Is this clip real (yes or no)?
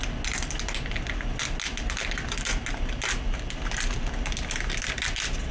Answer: yes